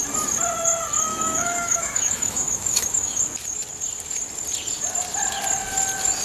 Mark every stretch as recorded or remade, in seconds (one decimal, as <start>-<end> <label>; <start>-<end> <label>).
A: 0.0-1.1 recorded; 1.1-3.2 remade; 3.2-6.2 recorded

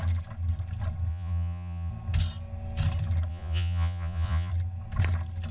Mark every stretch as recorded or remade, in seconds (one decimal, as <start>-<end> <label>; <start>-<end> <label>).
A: 0.0-1.1 recorded; 1.1-1.9 remade; 1.9-3.3 recorded; 3.3-4.5 remade; 4.5-5.5 recorded

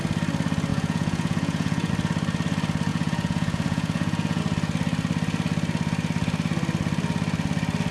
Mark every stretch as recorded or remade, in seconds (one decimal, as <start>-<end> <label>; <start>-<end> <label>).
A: 0.0-0.7 recorded; 0.7-1.9 remade; 1.9-2.9 recorded; 2.9-4.4 remade; 4.4-7.9 recorded